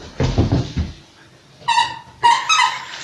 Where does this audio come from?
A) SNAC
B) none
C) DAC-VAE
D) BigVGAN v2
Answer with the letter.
B